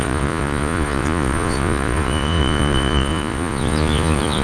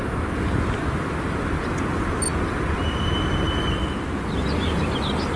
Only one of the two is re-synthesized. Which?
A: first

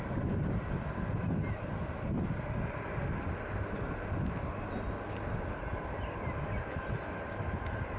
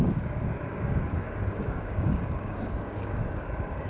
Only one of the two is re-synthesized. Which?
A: second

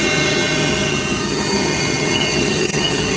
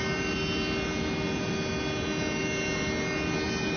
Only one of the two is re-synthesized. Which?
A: first